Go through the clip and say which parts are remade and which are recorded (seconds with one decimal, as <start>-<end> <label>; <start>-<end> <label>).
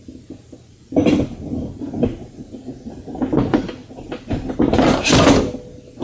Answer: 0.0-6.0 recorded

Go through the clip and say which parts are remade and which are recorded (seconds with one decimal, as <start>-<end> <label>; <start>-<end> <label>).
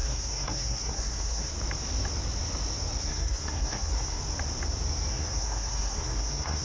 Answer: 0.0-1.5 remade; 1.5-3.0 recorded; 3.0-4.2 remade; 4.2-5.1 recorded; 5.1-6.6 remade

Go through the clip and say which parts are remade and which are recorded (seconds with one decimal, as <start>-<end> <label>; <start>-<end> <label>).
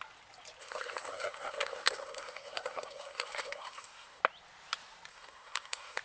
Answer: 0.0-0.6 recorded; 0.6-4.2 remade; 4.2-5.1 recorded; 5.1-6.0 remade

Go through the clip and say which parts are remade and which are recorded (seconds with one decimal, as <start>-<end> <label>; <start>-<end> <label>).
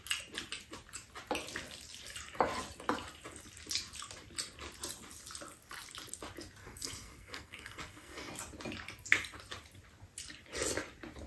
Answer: 0.0-6.6 recorded; 6.6-8.3 remade; 8.3-11.3 recorded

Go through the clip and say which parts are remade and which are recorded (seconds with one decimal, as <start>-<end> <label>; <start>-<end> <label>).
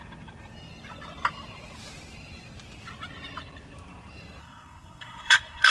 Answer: 0.0-4.4 recorded; 4.4-5.7 remade